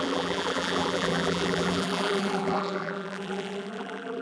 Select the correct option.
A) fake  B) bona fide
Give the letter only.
A